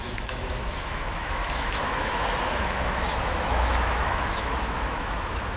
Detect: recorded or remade remade